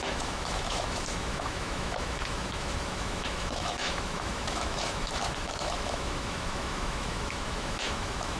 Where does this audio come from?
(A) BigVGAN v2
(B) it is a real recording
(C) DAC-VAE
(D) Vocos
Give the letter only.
C